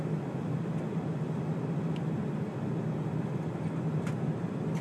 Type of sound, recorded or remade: recorded